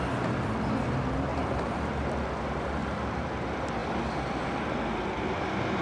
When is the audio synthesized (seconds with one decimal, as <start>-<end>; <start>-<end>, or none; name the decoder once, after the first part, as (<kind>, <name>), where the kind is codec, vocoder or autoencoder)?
1.3-1.9 (vocoder, BigVGAN v2); 2.8-3.3

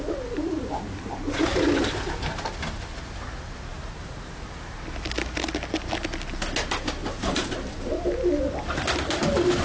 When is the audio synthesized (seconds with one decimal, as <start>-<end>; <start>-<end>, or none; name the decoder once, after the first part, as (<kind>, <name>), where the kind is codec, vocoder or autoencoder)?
3.7-4.8 (vocoder, BigVGAN v2); 7.0-7.9

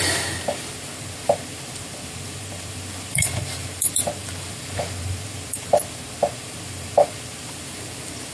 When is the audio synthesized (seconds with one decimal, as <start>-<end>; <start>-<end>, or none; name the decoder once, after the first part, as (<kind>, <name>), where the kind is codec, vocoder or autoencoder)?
0.0-8.3 (vocoder, BigVGAN v2)

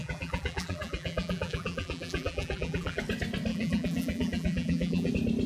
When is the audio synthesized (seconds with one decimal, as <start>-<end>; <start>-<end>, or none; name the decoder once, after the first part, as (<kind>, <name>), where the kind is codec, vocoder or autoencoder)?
0.0-3.0 (vocoder, BigVGAN v2); 3.5-5.1

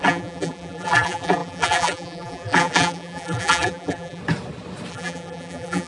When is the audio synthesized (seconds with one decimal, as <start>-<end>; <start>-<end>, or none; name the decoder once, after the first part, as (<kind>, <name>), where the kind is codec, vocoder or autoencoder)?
0.0-4.2 (vocoder, BigVGAN v2); 4.9-5.9

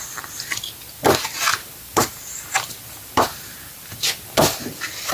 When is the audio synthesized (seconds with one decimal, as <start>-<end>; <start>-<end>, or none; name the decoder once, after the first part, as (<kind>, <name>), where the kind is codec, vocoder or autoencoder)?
1.5-4.6 (vocoder, BigVGAN v2)